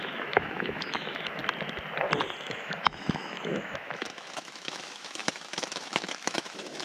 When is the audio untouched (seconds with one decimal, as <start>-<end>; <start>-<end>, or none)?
1.4-2.4